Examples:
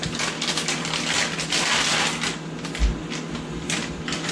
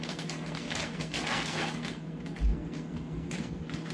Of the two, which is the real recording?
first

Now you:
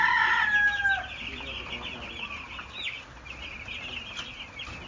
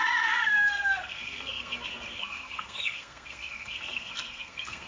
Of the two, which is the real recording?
first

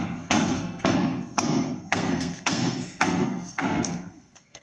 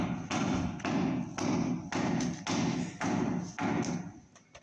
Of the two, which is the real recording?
second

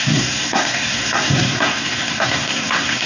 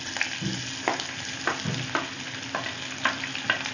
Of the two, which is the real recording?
second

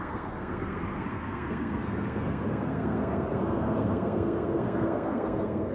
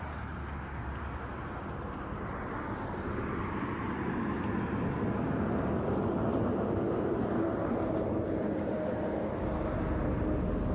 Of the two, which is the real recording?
second